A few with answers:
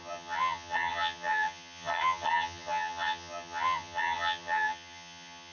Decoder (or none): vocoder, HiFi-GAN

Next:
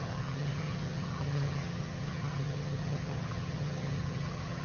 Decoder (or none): vocoder, HiFi-GAN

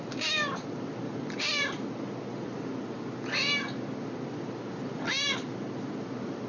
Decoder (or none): none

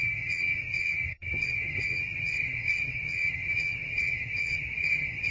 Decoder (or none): vocoder, HiFi-GAN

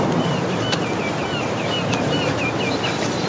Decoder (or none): none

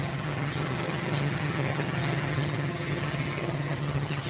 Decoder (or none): vocoder, HiFi-GAN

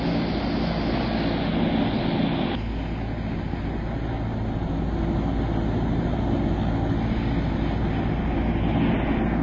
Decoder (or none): none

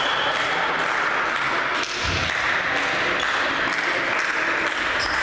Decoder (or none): none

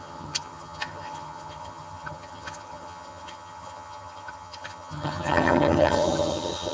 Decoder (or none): vocoder, HiFi-GAN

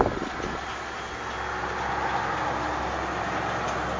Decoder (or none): none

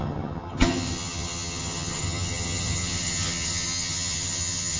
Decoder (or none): vocoder, HiFi-GAN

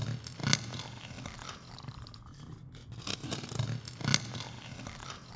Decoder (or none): none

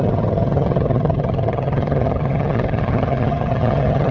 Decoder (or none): vocoder, HiFi-GAN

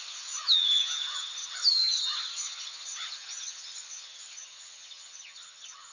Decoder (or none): vocoder, HiFi-GAN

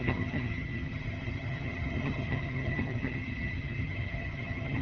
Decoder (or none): vocoder, HiFi-GAN